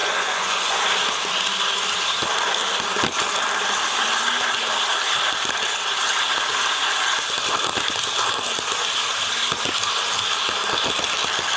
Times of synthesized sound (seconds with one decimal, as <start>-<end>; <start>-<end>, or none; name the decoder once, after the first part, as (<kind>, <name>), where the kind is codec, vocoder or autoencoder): 0.0-0.8 (vocoder, Vocos)